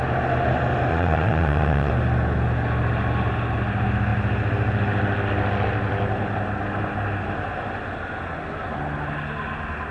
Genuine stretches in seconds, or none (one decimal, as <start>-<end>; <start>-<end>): 0.0-0.9; 1.9-9.9